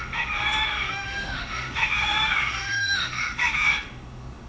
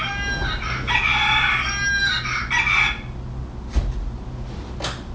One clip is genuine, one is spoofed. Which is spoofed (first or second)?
first